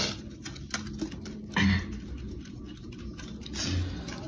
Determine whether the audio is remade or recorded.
recorded